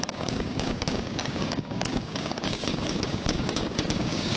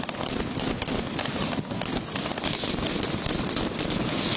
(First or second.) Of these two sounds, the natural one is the second